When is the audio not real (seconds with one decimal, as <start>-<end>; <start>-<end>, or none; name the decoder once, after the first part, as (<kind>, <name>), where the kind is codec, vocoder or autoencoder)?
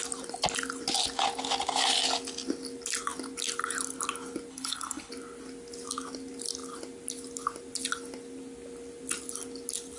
4.5-5.1 (codec, HILCodec)